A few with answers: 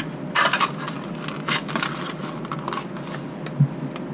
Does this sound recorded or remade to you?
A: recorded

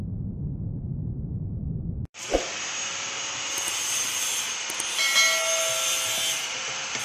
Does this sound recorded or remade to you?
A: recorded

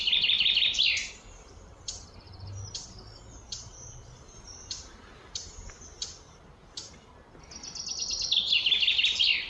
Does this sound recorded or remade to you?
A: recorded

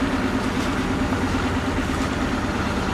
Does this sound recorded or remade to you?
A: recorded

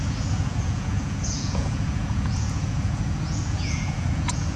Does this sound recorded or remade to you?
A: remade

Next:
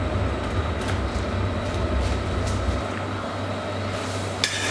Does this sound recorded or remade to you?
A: recorded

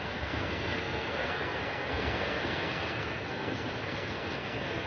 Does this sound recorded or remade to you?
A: remade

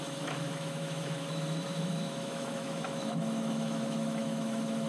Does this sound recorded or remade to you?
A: remade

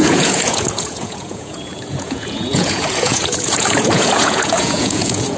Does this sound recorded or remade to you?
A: remade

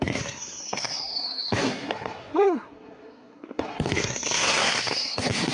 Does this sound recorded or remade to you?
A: remade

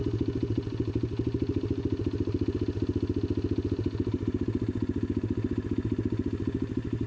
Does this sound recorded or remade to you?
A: recorded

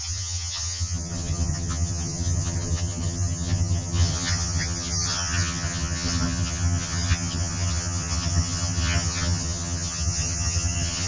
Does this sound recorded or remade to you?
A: remade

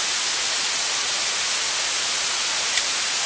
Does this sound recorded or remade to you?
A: remade